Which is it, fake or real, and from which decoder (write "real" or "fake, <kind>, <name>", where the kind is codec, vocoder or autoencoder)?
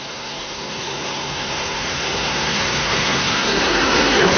fake, codec, SNAC